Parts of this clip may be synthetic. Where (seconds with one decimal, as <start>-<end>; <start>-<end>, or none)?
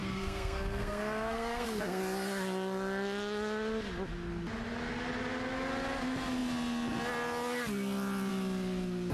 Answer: 0.0-2.0